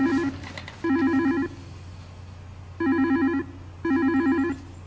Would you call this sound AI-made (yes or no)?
no